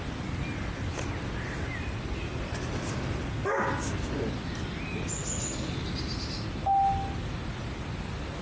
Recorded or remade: recorded